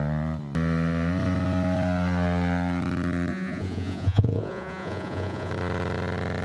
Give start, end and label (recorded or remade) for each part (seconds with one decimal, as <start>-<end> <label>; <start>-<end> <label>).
0.0-3.3 recorded; 3.3-5.5 remade; 5.5-6.4 recorded